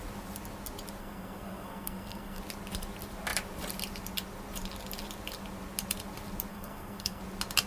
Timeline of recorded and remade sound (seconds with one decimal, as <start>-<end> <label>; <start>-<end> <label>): 0.0-1.0 recorded; 1.0-2.4 remade; 2.4-6.5 recorded; 6.5-7.2 remade; 7.2-7.7 recorded